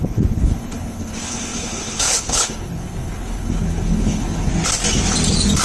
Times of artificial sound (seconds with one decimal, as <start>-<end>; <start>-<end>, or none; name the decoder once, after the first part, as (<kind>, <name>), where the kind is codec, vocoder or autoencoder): 0.0-4.5 (codec, HILCodec)